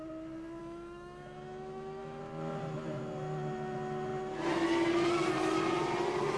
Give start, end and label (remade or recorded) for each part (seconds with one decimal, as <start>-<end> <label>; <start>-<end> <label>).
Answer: 0.0-0.6 recorded; 0.6-2.2 remade; 2.2-6.4 recorded